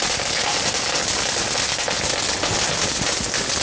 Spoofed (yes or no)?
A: no